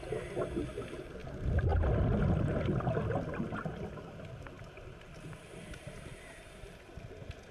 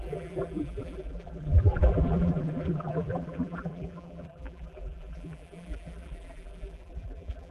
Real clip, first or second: first